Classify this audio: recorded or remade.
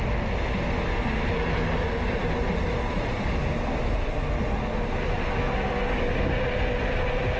recorded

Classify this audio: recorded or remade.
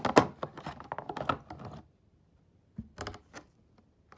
recorded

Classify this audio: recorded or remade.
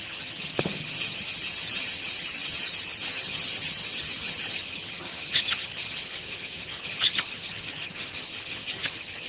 remade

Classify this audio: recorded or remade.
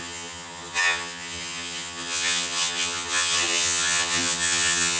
remade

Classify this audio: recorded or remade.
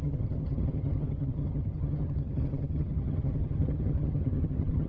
remade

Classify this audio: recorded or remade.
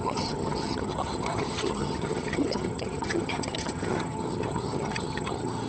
remade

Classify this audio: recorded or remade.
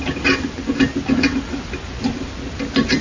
recorded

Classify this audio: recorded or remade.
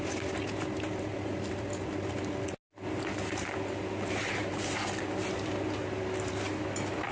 recorded